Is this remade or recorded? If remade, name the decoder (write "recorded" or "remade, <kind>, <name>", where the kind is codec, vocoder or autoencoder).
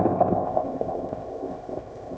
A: remade, codec, ZipCodec